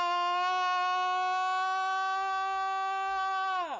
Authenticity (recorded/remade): recorded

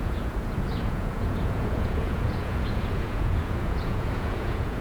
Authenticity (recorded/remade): remade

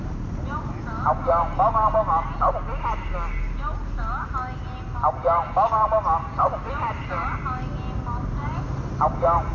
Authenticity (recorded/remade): recorded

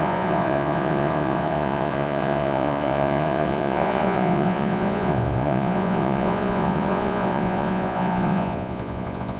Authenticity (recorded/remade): remade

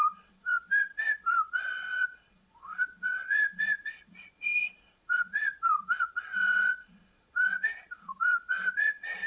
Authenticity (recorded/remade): remade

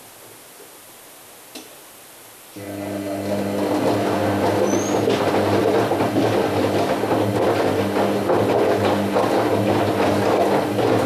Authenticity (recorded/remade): recorded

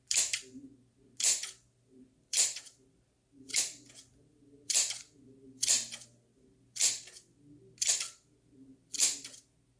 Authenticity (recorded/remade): recorded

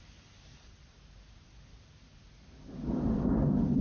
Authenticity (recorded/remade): recorded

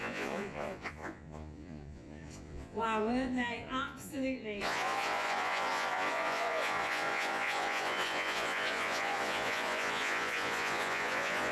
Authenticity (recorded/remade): remade